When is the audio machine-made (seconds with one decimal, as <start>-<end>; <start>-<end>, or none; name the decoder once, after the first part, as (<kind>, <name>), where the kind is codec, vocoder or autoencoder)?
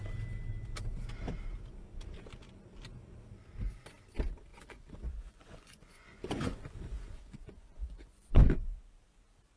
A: 4.5-8.8 (vocoder, Vocos)